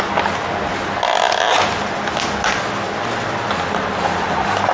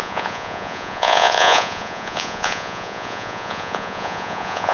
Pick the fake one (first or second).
second